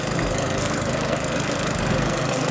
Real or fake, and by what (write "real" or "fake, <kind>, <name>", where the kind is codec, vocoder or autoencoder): fake, codec, SNAC